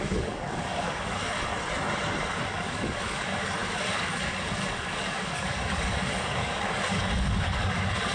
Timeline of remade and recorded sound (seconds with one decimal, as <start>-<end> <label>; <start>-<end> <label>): 0.0-1.5 remade; 1.5-2.3 recorded; 2.3-8.1 remade